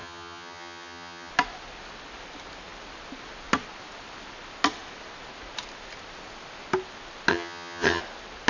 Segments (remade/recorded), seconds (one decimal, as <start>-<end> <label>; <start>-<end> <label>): 0.0-1.3 remade; 1.3-7.3 recorded; 7.3-8.0 remade; 8.0-8.5 recorded